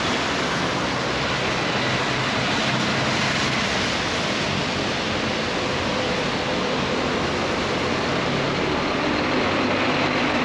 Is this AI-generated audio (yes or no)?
no